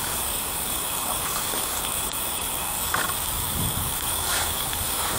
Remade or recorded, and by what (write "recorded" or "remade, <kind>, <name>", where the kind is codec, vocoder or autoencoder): remade, codec, DAC